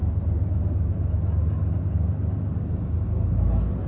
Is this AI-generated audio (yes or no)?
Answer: no